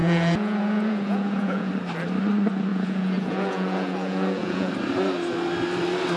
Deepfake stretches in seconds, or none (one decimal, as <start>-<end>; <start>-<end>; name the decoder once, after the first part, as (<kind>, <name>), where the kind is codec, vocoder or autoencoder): 0.0-1.7 (vocoder, Vocos); 2.7-4.7